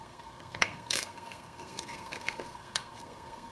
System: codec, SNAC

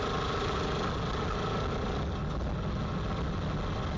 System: none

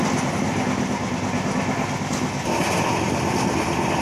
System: none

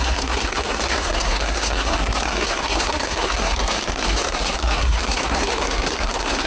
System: codec, SNAC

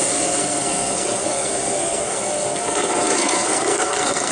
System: codec, SNAC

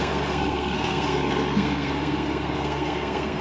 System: codec, SNAC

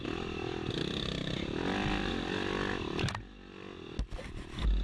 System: none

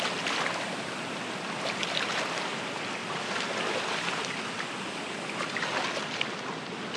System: none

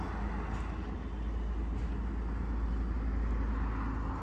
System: none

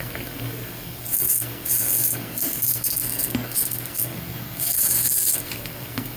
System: codec, SNAC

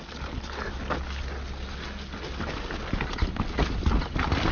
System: none